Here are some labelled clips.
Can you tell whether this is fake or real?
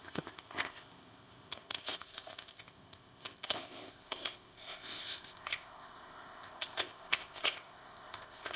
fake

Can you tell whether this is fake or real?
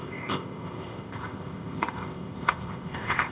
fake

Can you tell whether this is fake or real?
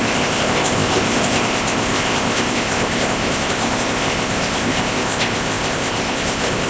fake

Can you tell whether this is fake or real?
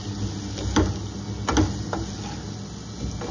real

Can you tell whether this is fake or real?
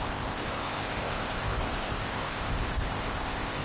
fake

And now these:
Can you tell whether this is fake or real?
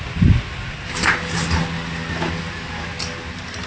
real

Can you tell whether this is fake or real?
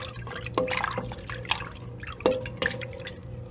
real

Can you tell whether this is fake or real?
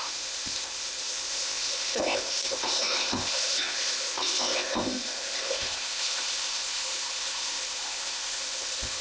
fake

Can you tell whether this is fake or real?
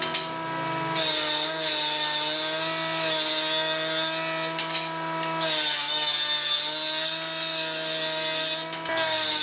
real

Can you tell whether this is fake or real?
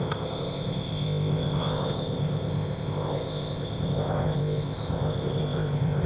fake